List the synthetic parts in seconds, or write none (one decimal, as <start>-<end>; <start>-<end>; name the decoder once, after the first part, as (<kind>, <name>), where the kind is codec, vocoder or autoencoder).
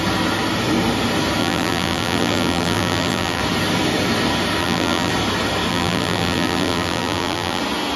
1.4-3.4 (vocoder, BigVGAN v2); 4.6-5.1; 5.7-7.6